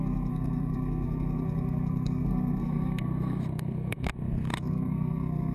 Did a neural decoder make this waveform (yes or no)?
yes